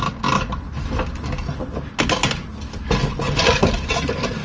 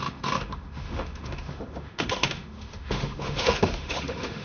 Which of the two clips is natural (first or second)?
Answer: first